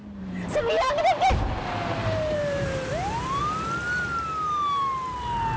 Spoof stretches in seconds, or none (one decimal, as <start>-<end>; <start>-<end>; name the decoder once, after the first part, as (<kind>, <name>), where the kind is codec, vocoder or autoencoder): 0.0-1.0 (vocoder, BigVGAN v2); 2.0-3.4